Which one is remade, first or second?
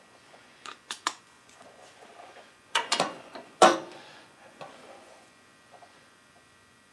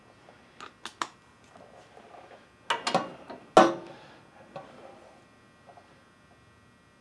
first